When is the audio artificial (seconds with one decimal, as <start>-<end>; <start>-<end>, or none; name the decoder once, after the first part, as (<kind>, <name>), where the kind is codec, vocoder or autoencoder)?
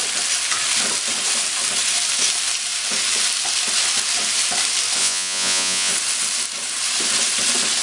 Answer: 5.0-5.9 (vocoder, Vocos)